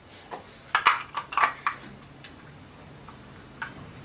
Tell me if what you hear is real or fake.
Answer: fake